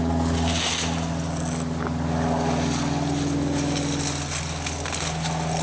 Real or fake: real